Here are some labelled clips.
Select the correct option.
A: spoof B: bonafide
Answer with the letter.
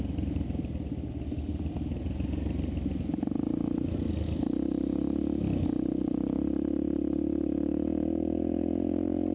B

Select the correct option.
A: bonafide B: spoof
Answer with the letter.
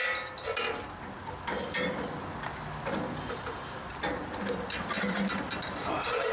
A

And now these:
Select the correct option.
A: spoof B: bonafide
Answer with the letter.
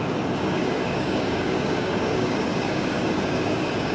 A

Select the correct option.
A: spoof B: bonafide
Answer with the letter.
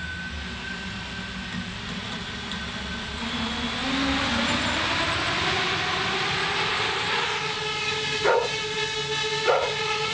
B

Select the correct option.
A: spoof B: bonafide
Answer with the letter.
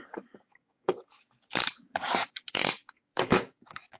A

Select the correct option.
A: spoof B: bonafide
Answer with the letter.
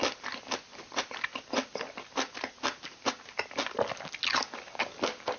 B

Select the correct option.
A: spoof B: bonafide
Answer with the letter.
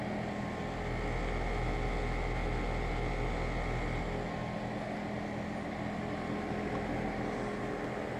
B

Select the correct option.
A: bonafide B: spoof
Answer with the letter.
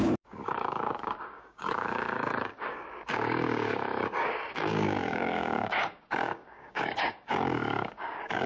B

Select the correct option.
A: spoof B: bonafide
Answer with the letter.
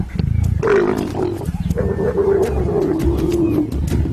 B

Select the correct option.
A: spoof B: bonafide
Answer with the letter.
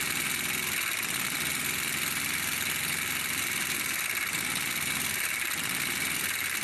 B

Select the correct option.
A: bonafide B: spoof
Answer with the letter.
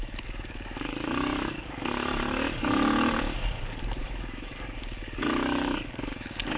B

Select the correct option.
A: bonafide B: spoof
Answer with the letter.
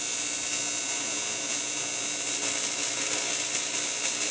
A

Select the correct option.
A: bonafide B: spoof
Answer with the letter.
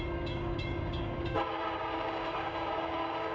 B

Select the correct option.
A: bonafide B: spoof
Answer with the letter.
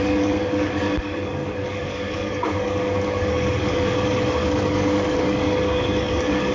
B